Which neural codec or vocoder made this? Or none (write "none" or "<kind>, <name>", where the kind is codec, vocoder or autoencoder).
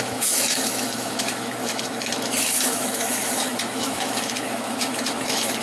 autoencoder, DAC-VAE